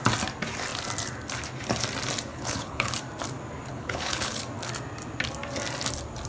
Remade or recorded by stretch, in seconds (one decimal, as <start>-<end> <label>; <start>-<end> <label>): 0.0-2.3 recorded; 2.3-2.9 remade; 2.9-3.7 recorded; 3.7-4.4 remade; 4.4-6.3 recorded